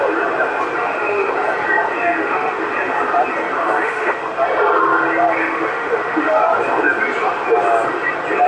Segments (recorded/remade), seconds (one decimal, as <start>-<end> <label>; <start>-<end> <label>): 0.0-0.8 recorded; 0.8-1.3 remade; 1.3-1.9 recorded; 1.9-2.7 remade; 2.7-3.6 recorded; 3.6-4.2 remade; 4.2-5.4 recorded; 5.4-6.4 remade; 6.4-8.5 recorded